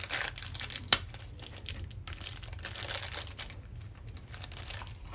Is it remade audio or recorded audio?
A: recorded